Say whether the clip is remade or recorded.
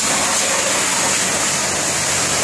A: recorded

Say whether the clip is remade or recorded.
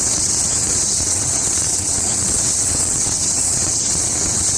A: remade